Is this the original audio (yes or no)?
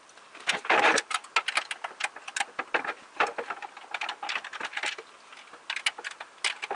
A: yes